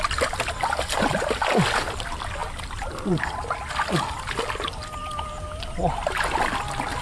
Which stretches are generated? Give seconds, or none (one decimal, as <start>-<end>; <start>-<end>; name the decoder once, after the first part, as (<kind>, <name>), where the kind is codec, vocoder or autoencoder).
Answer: none